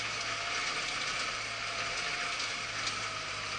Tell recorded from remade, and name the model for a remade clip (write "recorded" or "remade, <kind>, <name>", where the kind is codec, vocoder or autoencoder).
recorded